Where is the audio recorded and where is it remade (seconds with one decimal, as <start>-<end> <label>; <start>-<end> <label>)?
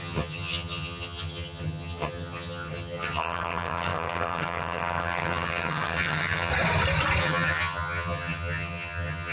0.0-6.5 remade; 6.5-7.2 recorded; 7.2-9.3 remade